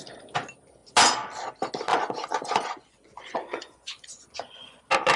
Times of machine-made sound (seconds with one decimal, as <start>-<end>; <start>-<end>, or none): 1.9-4.8